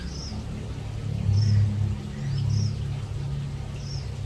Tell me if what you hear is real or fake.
real